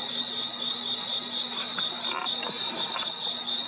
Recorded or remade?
recorded